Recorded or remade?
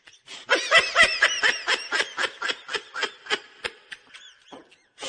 remade